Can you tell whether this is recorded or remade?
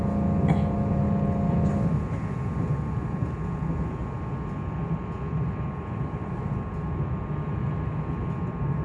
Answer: recorded